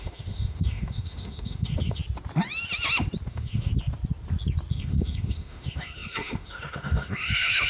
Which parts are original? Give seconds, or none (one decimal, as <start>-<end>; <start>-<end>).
2.0-3.3; 3.7-4.7